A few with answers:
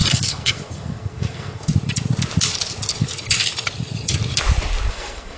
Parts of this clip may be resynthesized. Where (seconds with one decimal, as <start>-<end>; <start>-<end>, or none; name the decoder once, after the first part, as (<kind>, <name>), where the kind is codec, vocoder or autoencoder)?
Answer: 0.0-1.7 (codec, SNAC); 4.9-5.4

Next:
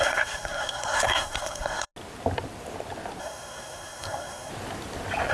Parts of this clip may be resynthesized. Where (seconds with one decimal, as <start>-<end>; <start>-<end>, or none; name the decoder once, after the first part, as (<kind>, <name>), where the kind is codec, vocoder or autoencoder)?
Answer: 0.0-1.9 (codec, SNAC); 3.2-4.5

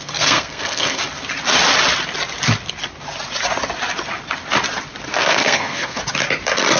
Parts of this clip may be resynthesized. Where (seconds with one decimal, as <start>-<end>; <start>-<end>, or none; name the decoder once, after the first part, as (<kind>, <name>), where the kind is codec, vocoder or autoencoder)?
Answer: 0.0-1.0 (codec, SNAC); 5.1-6.0